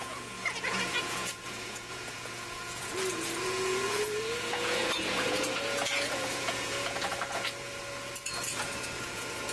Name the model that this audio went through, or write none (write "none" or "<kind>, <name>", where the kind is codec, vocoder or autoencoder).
vocoder, Vocos